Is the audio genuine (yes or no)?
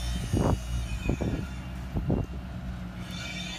yes